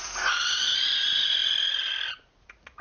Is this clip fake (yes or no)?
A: yes